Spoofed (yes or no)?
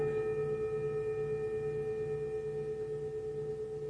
no